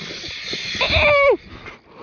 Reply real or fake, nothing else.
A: real